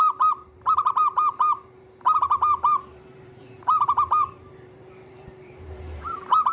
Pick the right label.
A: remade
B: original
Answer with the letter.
A